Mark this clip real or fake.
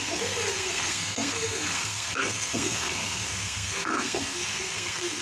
fake